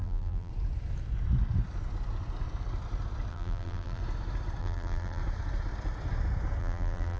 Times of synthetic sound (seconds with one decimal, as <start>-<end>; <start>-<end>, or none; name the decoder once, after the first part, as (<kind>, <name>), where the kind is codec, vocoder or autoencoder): 0.0-0.5 (vocoder, BigVGAN v2); 3.3-4.0; 4.6-5.2; 6.6-7.2